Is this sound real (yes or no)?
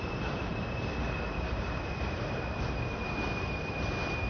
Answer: no